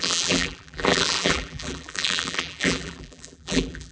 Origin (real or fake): fake